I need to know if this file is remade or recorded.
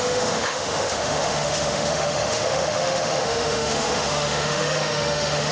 remade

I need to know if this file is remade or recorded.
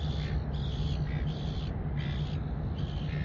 recorded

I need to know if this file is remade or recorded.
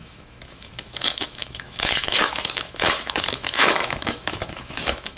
remade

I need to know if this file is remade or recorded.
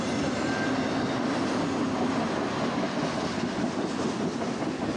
recorded